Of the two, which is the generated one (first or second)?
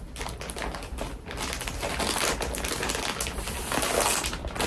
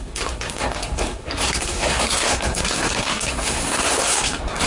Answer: second